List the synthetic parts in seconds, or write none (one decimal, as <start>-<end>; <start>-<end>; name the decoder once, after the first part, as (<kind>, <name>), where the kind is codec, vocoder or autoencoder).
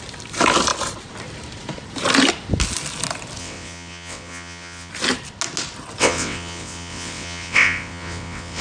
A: 3.4-4.9 (vocoder, WaveNeXt); 6.0-8.6